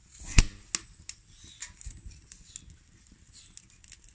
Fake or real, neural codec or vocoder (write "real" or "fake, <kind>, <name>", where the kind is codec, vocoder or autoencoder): real